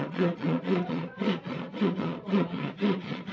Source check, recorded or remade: remade